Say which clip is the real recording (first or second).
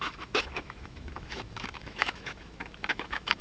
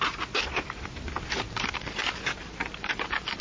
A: second